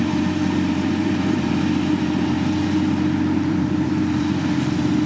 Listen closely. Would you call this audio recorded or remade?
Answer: remade